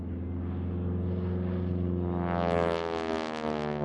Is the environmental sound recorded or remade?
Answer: recorded